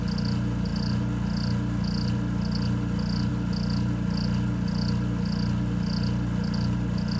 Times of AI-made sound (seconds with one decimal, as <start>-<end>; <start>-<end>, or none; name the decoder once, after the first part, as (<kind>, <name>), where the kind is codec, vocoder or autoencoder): none